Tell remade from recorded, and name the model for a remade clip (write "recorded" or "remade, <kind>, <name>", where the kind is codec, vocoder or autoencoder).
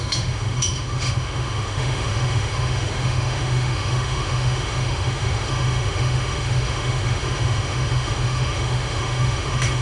remade, autoencoder, DAC-VAE